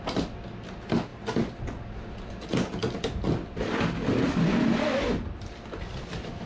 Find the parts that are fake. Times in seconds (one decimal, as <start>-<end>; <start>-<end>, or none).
none